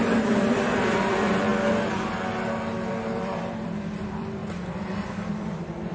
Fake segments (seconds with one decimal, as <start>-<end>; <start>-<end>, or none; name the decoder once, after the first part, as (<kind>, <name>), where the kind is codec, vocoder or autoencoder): 0.0-1.5 (vocoder, BigVGAN v2); 2.9-4.4; 5.3-5.9

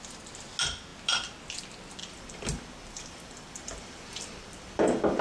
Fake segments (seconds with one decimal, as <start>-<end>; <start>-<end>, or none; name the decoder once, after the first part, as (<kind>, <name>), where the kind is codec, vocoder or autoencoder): 2.0-5.2 (vocoder, BigVGAN v2)

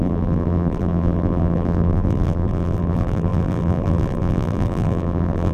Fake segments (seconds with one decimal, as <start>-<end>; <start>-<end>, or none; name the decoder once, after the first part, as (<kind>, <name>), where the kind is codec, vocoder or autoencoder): 0.0-5.5 (vocoder, BigVGAN v2)

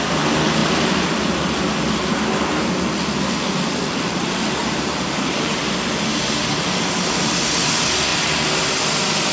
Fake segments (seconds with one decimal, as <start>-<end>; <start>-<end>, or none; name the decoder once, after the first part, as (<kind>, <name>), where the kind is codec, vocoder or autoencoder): 4.6-5.6 (vocoder, BigVGAN v2)

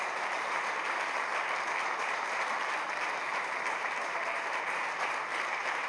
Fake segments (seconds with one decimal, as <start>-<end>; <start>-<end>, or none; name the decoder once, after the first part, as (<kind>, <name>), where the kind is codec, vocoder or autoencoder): 0.0-1.3 (vocoder, BigVGAN v2); 2.0-5.9

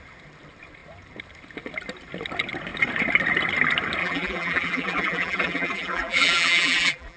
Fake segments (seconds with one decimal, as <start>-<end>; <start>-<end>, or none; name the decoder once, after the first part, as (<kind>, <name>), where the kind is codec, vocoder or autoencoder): 4.0-7.2 (vocoder, BigVGAN v2)

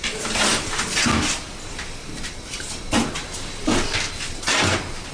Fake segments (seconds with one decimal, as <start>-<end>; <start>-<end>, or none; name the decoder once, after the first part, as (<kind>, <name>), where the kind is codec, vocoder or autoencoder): none

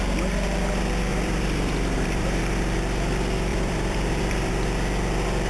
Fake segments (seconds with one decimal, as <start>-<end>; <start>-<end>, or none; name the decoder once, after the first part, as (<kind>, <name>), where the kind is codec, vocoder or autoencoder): 1.1-2.4 (vocoder, BigVGAN v2); 3.5-4.5